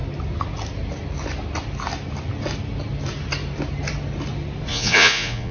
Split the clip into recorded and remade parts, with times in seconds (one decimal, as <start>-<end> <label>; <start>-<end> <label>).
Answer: 0.0-4.7 recorded; 4.7-5.5 remade